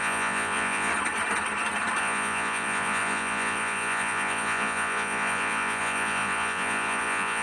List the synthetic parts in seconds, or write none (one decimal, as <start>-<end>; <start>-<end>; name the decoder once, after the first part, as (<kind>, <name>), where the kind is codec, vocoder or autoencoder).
0.0-0.9 (vocoder, Vocos); 2.0-7.4